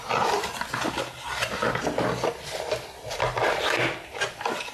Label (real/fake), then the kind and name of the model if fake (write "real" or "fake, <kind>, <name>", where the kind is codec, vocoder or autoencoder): real